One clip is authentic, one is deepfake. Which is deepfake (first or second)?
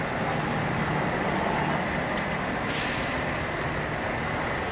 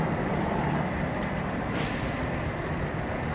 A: second